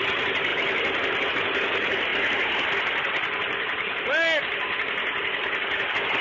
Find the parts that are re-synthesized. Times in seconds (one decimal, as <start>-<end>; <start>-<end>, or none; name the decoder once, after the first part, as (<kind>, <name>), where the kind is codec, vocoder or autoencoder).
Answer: none